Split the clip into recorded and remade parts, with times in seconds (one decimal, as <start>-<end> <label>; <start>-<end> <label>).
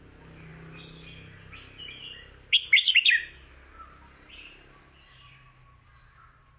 0.0-6.6 recorded